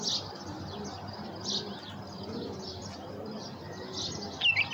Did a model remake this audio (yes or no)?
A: no